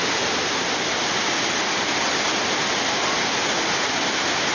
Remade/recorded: recorded